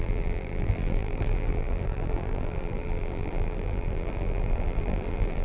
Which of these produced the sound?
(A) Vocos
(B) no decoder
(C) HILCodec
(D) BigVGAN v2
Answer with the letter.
D